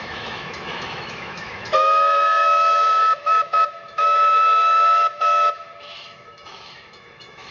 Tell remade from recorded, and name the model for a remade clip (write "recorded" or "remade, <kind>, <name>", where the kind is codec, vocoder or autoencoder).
remade, autoencoder, DAC-VAE